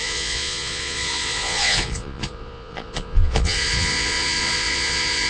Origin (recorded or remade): remade